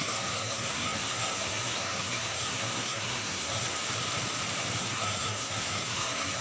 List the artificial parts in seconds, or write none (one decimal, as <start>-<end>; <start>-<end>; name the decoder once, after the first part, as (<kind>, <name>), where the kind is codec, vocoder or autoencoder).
0.0-3.8 (codec, SNAC); 4.8-6.4